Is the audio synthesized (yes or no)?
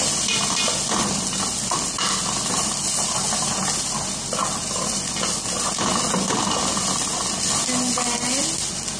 no